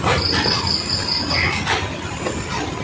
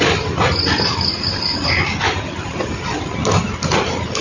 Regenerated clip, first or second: second